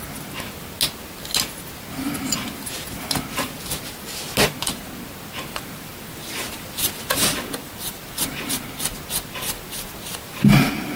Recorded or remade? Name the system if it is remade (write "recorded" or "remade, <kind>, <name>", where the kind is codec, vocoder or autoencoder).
recorded